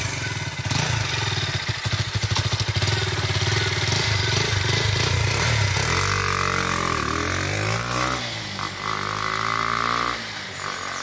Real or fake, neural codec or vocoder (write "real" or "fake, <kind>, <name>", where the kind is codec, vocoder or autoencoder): real